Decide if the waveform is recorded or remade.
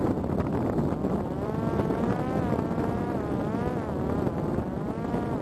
recorded